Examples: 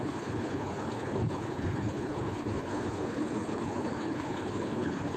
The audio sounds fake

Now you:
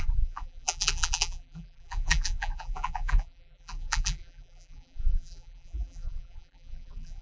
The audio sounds fake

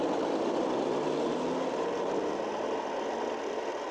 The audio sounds real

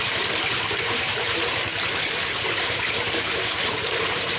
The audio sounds fake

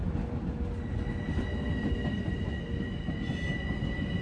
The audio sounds real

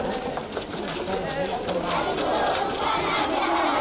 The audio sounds real